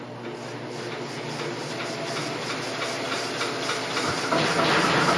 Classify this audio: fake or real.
real